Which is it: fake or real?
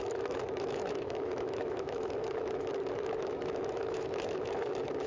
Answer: fake